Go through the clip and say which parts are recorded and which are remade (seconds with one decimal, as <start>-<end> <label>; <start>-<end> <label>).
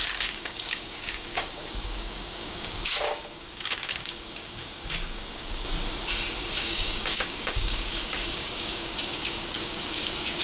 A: 0.0-5.7 remade; 5.7-6.6 recorded; 6.6-10.4 remade